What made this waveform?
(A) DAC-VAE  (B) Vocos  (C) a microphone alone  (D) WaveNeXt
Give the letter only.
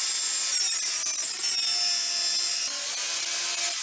C